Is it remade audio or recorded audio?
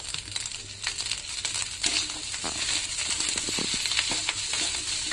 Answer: recorded